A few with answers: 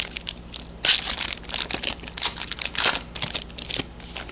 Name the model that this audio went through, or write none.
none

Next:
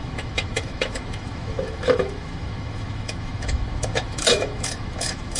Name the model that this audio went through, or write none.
autoencoder, DAC-VAE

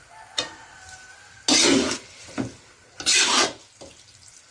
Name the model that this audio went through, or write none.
none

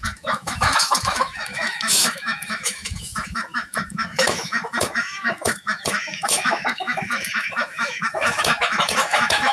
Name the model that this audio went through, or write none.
autoencoder, DAC-VAE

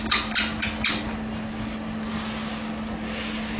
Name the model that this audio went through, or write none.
none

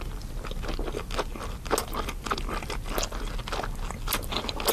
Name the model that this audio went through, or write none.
none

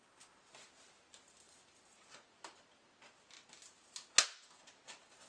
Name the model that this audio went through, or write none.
none